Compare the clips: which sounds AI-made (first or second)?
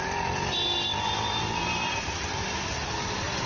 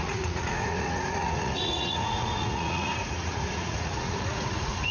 second